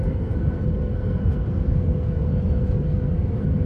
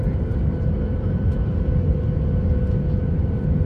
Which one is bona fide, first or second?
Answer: second